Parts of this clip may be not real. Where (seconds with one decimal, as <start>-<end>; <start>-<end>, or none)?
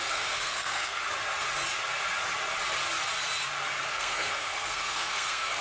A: 0.0-1.0; 3.9-5.6